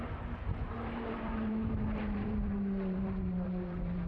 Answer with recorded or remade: remade